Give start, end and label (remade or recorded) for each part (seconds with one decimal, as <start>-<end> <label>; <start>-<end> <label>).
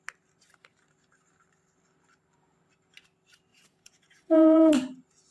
0.0-3.5 recorded; 3.5-4.7 remade; 4.7-5.3 recorded